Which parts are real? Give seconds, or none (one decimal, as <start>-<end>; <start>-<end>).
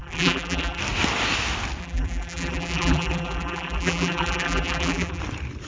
0.8-1.8; 5.2-5.7